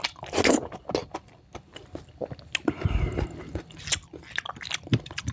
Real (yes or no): yes